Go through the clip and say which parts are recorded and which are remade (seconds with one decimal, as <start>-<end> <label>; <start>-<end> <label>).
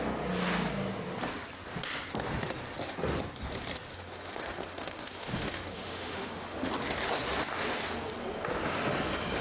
0.0-3.9 recorded; 3.9-6.7 remade; 6.7-9.4 recorded